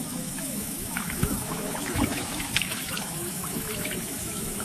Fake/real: fake